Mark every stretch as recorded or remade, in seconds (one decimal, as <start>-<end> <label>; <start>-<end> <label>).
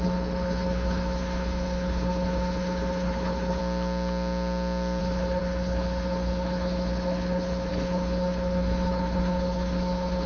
0.0-3.6 remade; 3.6-5.0 recorded; 5.0-10.3 remade